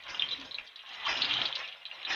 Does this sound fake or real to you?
real